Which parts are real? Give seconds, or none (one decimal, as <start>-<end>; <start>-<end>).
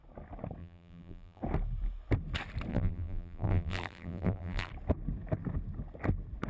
0.0-0.6; 1.4-2.7; 4.7-6.5